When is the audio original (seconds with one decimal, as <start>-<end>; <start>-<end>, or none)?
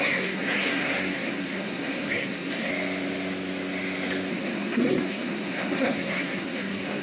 2.7-4.3